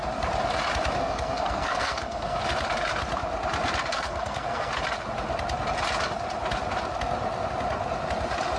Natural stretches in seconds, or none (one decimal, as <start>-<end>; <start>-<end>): 0.0-1.0; 2.4-3.9; 4.7-8.6